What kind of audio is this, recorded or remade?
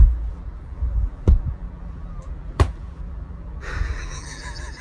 remade